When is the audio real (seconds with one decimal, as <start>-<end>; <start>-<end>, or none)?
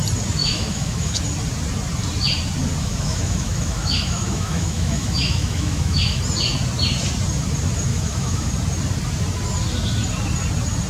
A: 0.0-0.4; 1.2-2.8; 6.2-7.9; 8.5-10.9